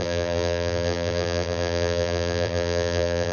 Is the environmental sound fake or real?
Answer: fake